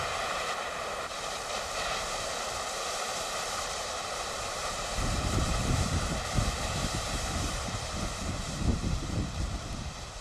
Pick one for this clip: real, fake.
fake